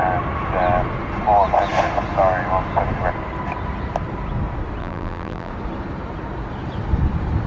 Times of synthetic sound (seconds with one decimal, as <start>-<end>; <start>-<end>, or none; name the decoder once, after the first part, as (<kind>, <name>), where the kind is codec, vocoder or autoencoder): 4.8-5.5 (vocoder, BigVGAN v2)